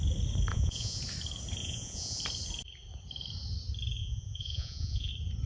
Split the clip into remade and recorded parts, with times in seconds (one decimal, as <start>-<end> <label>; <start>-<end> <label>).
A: 0.0-0.5 recorded; 0.5-1.0 remade; 1.0-1.6 recorded; 1.6-2.2 remade; 2.2-4.0 recorded; 4.0-5.1 remade; 5.1-5.5 recorded